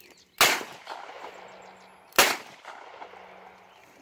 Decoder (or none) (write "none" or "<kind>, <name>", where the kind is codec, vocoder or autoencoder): none